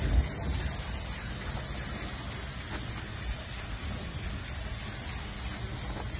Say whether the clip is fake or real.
real